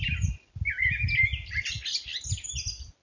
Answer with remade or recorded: recorded